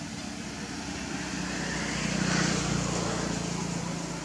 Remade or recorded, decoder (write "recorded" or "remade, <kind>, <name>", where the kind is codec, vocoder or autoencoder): recorded